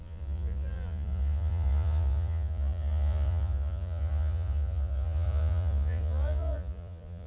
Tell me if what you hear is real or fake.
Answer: fake